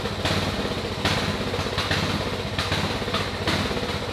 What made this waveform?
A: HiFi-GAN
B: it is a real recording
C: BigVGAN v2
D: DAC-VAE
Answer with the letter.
B